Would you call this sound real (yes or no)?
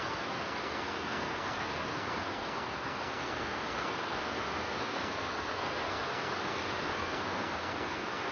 no